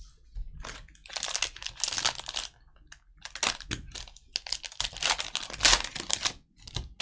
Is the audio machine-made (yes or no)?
no